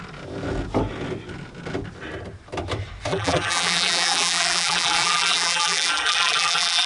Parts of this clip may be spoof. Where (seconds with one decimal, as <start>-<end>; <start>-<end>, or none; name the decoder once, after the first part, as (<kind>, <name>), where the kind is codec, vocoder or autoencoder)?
3.1-6.9 (vocoder, BigVGAN v2)